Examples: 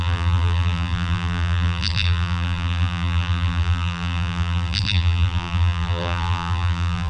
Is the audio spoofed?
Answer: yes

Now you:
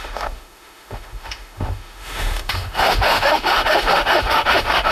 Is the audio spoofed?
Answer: yes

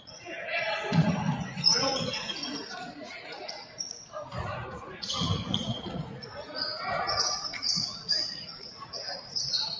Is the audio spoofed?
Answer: yes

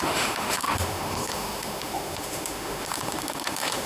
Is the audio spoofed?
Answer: yes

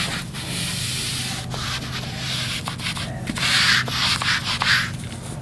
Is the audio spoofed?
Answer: no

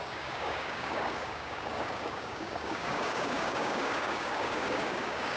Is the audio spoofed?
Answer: yes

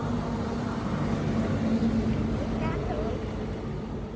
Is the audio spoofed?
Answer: no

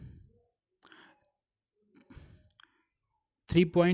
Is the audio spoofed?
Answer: no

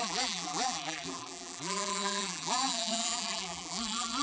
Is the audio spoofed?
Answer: yes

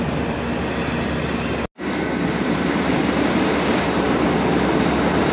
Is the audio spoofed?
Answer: no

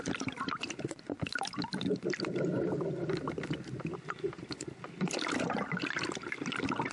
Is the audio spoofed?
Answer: no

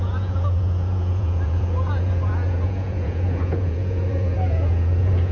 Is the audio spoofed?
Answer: yes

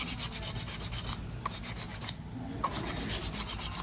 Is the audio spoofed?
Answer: no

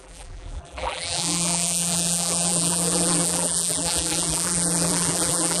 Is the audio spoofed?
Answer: yes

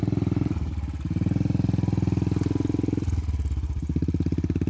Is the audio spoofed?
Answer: no